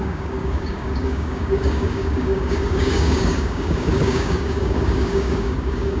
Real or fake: fake